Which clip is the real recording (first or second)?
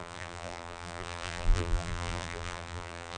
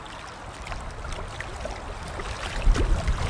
second